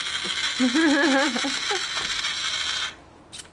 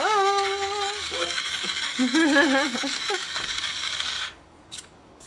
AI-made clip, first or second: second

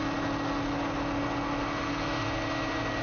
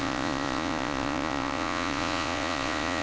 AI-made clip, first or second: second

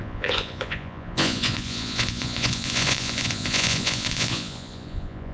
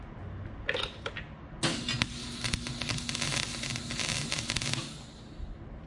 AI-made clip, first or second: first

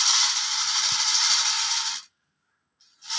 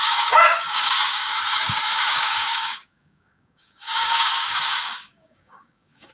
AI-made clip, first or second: second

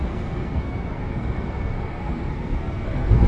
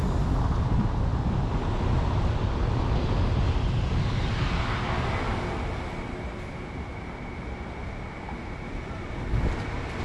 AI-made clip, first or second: first